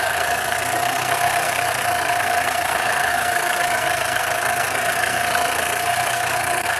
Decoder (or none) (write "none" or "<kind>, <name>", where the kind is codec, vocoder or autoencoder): codec, SNAC